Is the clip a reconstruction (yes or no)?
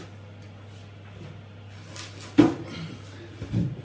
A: no